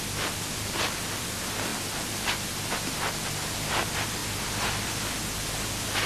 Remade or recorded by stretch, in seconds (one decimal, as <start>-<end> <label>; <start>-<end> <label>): 0.0-6.1 recorded